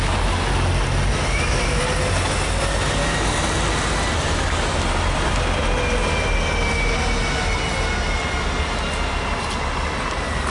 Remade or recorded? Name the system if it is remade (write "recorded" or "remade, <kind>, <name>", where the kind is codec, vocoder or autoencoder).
recorded